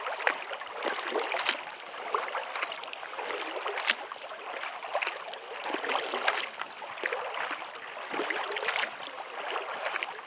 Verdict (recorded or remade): recorded